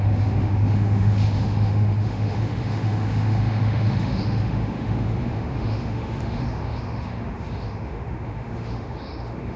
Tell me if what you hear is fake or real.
fake